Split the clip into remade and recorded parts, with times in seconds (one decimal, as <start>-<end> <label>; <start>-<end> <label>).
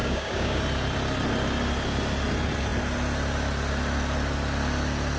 0.0-0.6 remade; 0.6-5.2 recorded